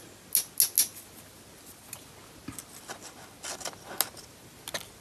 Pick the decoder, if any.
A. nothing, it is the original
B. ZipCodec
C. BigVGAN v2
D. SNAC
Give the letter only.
A